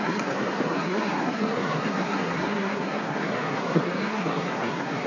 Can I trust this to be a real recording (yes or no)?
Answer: no